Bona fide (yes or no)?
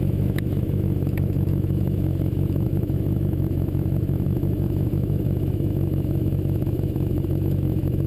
no